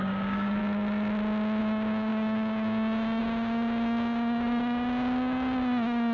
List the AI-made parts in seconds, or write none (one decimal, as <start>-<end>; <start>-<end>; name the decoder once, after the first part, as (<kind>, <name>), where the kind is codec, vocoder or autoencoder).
0.0-0.6 (codec, DAC); 1.6-6.1